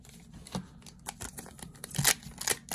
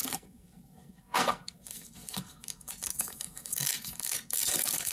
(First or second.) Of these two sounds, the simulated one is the second